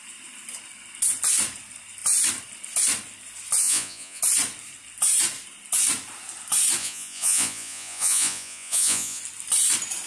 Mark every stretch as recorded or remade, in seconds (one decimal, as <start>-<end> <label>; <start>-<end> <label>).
0.0-3.6 recorded; 3.6-4.2 remade; 4.2-6.8 recorded; 6.8-9.2 remade; 9.2-10.1 recorded